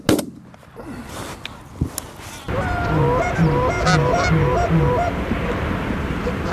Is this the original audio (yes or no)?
yes